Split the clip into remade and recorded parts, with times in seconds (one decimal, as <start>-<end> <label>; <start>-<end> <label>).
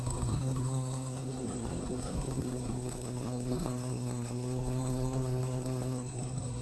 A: 0.0-6.6 remade